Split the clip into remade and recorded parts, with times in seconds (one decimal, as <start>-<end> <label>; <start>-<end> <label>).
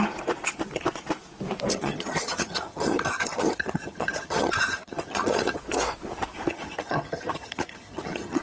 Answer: 0.0-1.7 recorded; 1.7-5.6 remade; 5.6-6.5 recorded; 6.5-8.4 remade